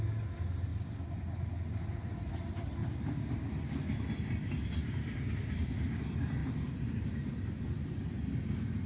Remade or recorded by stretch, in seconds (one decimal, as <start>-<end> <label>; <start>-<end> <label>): 0.0-0.7 recorded; 0.7-1.2 remade; 1.2-2.8 recorded; 2.8-3.7 remade; 3.7-6.4 recorded; 6.4-7.0 remade; 7.0-8.9 recorded

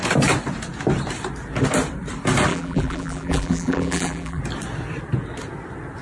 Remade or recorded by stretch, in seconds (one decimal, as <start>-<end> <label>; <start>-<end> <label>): 0.0-2.5 recorded; 2.5-4.4 remade; 4.4-6.0 recorded

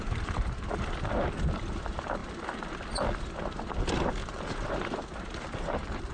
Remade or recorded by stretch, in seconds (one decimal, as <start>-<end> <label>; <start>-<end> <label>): 0.0-6.1 recorded

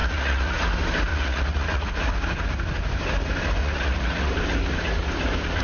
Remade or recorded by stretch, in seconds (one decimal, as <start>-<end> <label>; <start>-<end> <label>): 0.0-0.6 remade; 0.6-1.1 recorded; 1.1-1.9 remade; 1.9-3.6 recorded; 3.6-4.3 remade; 4.3-5.6 recorded

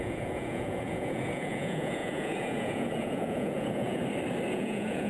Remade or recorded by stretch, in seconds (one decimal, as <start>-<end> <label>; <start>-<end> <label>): 0.0-4.0 remade; 4.0-4.5 recorded; 4.5-5.1 remade

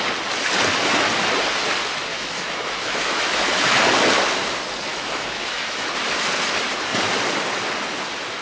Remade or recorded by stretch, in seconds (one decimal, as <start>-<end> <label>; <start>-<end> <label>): 0.0-2.1 recorded; 2.1-3.8 remade; 3.8-4.9 recorded; 4.9-5.9 remade; 5.9-8.4 recorded

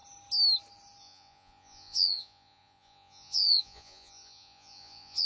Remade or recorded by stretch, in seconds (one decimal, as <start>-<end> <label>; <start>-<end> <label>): 0.0-1.0 recorded; 1.0-5.3 remade